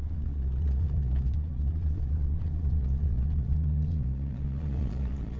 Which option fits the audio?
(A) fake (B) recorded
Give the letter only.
A